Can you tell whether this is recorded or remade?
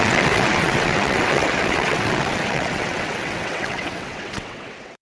remade